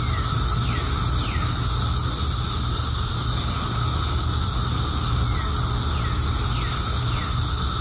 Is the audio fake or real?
real